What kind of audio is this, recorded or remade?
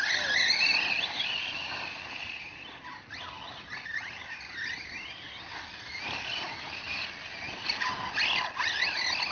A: recorded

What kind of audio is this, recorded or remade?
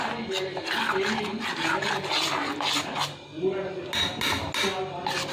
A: recorded